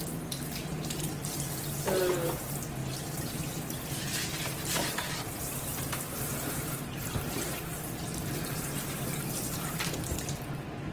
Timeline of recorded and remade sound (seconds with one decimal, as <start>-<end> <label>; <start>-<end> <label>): 0.0-10.9 remade